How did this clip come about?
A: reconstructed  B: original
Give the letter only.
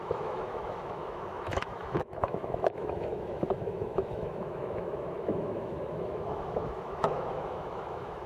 A